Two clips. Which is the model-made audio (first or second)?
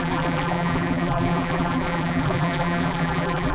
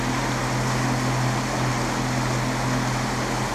first